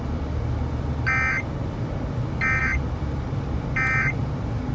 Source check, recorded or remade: recorded